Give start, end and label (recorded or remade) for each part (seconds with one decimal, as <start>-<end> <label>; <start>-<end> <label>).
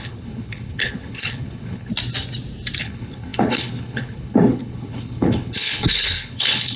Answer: 0.0-1.9 remade; 1.9-2.8 recorded; 2.8-6.8 remade